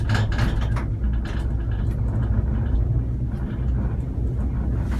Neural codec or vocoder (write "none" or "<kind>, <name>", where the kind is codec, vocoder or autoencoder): none